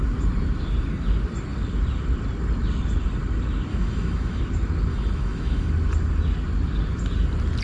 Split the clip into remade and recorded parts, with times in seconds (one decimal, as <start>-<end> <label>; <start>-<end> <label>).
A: 0.0-3.7 recorded; 3.7-4.4 remade; 4.4-4.9 recorded; 4.9-5.7 remade; 5.7-7.6 recorded